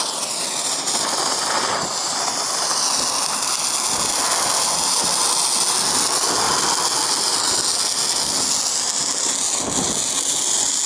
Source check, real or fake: real